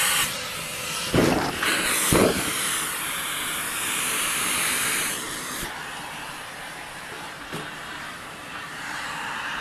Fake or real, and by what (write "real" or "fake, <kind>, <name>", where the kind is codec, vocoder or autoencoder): fake, vocoder, BigVGAN v2